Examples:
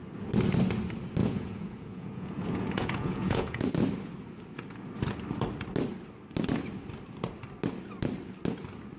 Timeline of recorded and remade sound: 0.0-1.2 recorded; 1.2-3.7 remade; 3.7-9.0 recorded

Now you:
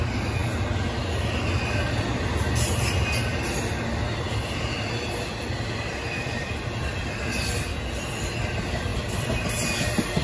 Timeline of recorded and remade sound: 0.0-10.2 recorded

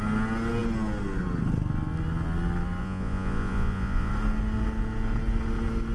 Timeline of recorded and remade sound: 0.0-2.8 recorded; 2.8-4.1 remade; 4.1-5.9 recorded

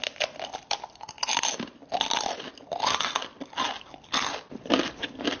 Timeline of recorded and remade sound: 0.0-5.4 recorded

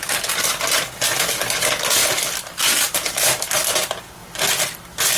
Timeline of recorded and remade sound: 0.0-5.2 recorded

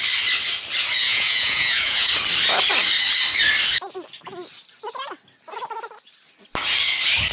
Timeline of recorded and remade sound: 0.0-1.0 recorded; 1.0-2.1 remade; 2.1-7.3 recorded

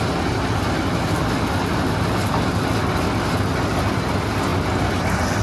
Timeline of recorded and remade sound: 0.0-5.4 recorded

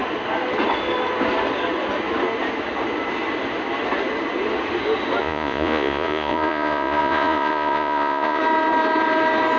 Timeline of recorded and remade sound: 0.0-5.2 recorded; 5.2-8.4 remade; 8.4-9.6 recorded